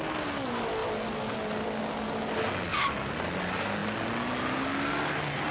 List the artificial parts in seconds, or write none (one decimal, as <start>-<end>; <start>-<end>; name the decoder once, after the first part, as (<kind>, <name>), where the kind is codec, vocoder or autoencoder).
none